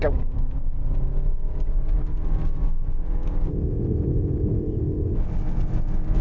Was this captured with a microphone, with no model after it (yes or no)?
yes